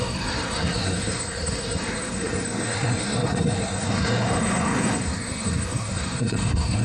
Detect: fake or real fake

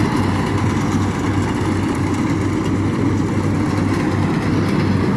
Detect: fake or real real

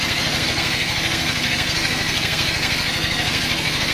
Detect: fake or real fake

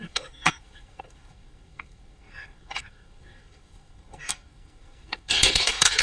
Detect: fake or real fake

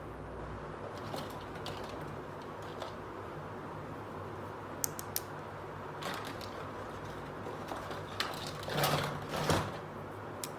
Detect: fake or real real